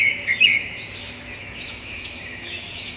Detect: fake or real fake